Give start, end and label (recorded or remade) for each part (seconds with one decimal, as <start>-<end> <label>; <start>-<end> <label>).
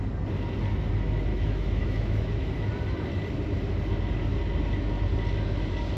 0.0-1.3 recorded; 1.3-2.5 remade; 2.5-6.0 recorded